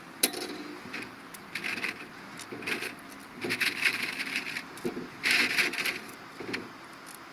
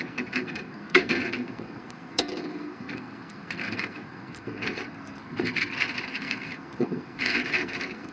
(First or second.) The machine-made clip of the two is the second